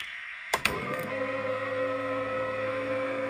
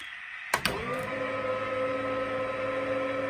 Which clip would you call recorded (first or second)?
second